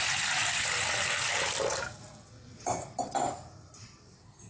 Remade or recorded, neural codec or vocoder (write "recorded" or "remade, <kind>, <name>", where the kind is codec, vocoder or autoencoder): remade, vocoder, BigVGAN v2